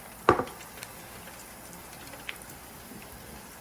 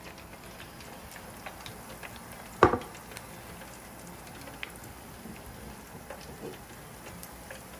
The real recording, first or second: second